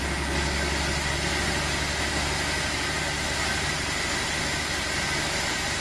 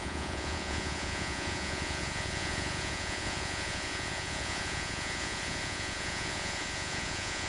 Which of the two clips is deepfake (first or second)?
second